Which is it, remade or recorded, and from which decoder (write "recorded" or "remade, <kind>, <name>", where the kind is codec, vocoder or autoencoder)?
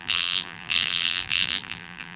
remade, vocoder, BigVGAN v2